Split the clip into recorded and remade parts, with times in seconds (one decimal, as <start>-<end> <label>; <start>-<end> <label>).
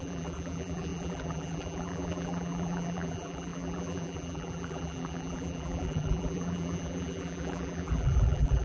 0.0-8.6 remade